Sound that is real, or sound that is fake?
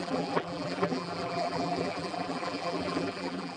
fake